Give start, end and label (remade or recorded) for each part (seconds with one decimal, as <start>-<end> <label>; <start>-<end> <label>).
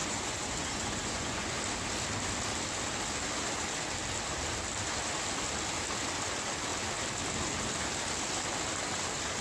0.0-1.6 remade; 1.6-9.4 recorded